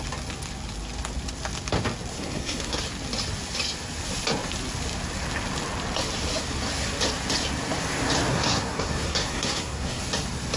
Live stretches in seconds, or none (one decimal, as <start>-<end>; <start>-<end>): 0.0-2.1; 2.8-8.3; 10.0-10.6